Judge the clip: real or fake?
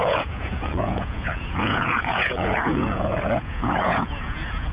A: fake